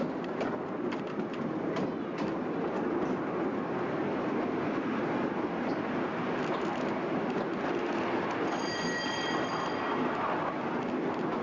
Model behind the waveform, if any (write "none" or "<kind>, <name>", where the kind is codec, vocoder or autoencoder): none